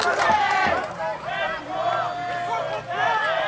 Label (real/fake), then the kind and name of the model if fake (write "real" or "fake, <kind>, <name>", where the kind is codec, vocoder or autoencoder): real